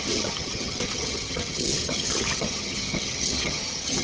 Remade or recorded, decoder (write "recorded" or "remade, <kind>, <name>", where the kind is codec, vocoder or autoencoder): remade, vocoder, HiFi-GAN